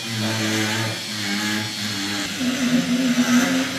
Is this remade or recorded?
recorded